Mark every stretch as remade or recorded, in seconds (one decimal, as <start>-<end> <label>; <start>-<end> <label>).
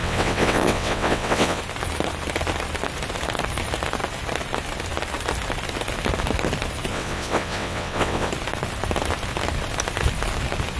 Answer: 0.0-1.6 remade; 1.6-6.9 recorded; 6.9-8.3 remade; 8.3-10.8 recorded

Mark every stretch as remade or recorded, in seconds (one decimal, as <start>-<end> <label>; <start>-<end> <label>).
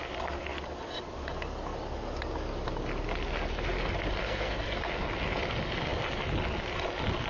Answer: 0.0-4.2 recorded; 4.2-4.8 remade; 4.8-7.3 recorded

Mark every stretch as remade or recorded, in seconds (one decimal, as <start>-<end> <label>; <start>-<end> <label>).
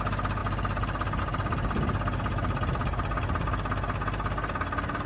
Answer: 0.0-5.1 recorded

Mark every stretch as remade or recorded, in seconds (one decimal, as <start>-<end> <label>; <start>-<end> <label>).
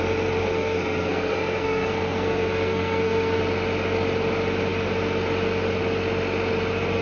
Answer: 0.0-0.4 recorded; 0.4-3.4 remade; 3.4-7.0 recorded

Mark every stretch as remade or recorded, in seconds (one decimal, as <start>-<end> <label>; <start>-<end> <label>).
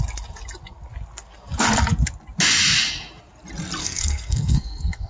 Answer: 0.0-3.8 recorded; 3.8-5.1 remade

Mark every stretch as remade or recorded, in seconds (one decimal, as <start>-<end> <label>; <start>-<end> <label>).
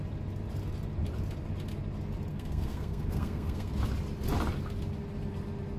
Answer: 0.0-2.3 recorded; 2.3-3.7 remade; 3.7-5.8 recorded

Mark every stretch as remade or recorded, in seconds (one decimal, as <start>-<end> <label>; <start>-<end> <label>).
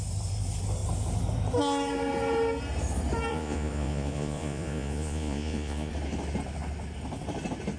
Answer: 0.0-3.3 recorded; 3.3-5.9 remade; 5.9-7.8 recorded